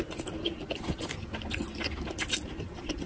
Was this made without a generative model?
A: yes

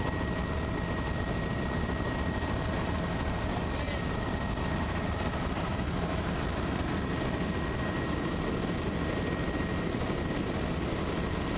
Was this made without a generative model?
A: yes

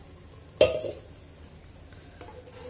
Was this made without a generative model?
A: yes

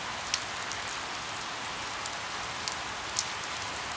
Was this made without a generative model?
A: yes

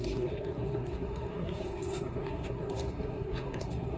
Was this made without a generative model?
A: no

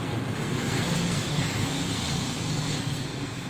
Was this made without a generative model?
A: no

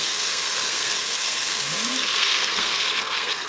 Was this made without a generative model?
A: no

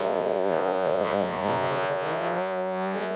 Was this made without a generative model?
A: no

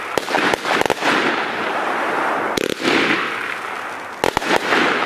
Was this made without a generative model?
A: yes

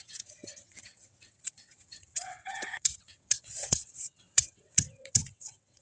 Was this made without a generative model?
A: no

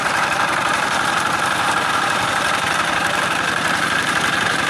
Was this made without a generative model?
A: no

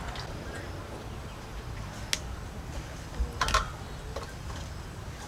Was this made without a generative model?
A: yes